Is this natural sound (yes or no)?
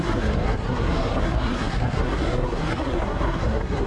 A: no